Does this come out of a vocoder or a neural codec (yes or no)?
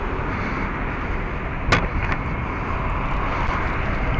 no